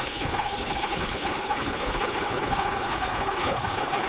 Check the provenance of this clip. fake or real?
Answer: fake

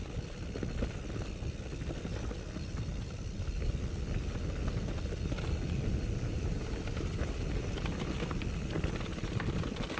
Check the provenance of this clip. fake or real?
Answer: real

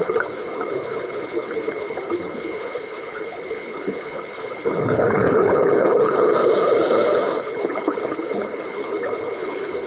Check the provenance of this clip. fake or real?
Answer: fake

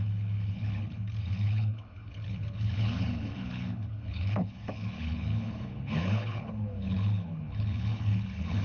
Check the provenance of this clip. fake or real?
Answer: fake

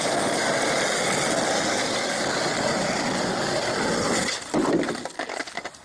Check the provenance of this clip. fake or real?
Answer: real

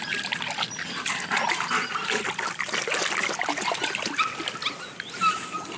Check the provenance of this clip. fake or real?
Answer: real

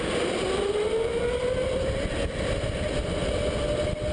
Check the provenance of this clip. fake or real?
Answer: real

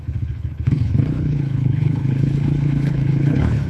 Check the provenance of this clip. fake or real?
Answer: fake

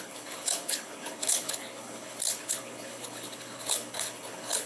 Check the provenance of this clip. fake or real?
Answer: fake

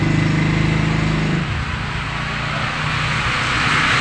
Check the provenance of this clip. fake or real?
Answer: real